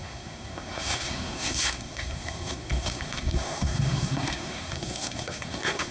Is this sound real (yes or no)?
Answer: no